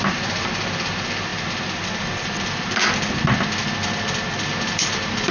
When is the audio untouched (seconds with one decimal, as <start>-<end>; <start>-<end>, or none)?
1.3-4.5